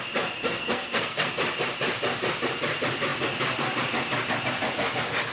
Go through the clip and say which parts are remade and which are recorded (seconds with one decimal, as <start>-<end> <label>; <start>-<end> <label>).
0.0-0.4 recorded; 0.4-1.3 remade; 1.3-5.3 recorded